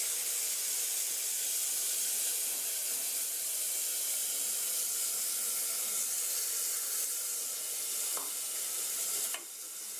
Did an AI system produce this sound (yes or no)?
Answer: no